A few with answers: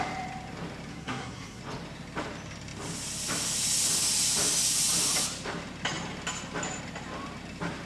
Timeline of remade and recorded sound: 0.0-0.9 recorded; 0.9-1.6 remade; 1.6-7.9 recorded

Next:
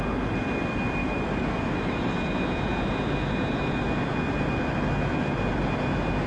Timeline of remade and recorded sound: 0.0-1.0 recorded; 1.0-2.1 remade; 2.1-6.3 recorded

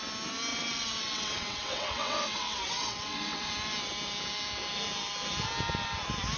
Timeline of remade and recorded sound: 0.0-0.5 recorded; 0.5-3.5 remade; 3.5-6.4 recorded

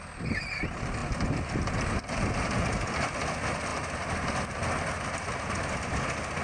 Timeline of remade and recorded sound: 0.0-6.4 recorded

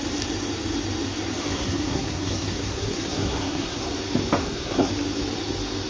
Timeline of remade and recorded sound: 0.0-1.5 recorded; 1.5-3.8 remade; 3.8-4.4 recorded; 4.4-4.9 remade; 4.9-5.9 recorded

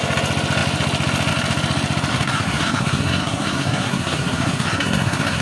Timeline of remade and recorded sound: 0.0-2.1 recorded; 2.1-5.4 remade